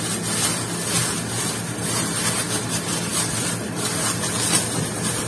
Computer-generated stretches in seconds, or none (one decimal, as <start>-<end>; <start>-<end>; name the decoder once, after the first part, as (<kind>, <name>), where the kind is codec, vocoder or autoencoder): none